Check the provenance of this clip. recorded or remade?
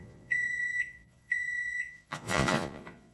remade